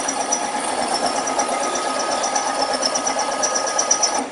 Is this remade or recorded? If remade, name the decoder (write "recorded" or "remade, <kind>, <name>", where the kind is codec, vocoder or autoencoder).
remade, vocoder, BigVGAN v2